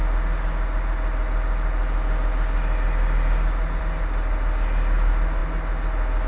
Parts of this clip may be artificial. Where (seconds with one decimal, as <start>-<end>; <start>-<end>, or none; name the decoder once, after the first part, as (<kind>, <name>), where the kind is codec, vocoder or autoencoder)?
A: none